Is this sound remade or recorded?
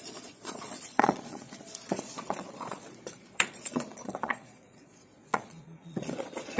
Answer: remade